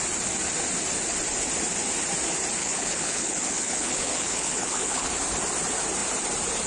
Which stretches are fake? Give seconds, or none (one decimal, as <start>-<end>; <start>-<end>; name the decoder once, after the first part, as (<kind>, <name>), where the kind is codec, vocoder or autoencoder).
2.6-5.1 (codec, HILCodec)